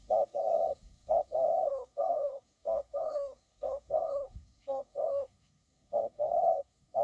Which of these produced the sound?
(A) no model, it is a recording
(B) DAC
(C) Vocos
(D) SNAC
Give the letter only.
D